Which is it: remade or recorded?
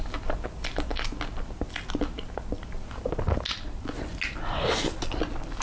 recorded